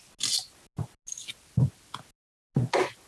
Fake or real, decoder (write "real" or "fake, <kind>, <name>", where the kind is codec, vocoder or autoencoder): real